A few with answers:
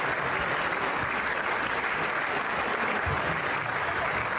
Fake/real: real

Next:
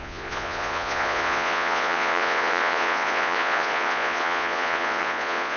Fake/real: fake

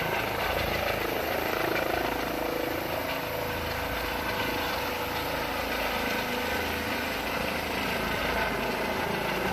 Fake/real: real